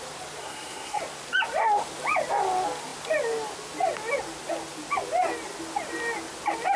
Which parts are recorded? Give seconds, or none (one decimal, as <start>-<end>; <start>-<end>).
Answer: 0.0-0.4; 1.0-6.8